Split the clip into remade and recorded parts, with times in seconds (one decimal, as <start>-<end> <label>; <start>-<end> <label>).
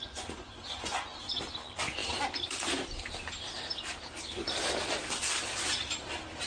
0.0-1.4 remade; 1.4-6.5 recorded